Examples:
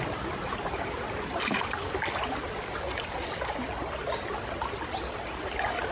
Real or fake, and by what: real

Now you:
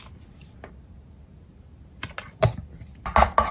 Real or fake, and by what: real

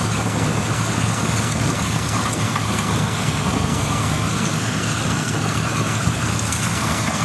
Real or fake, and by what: fake, codec, SNAC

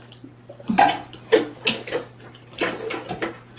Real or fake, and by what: real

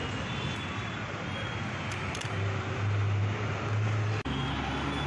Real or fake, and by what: real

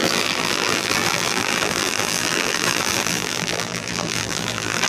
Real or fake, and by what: fake, vocoder, BigVGAN v2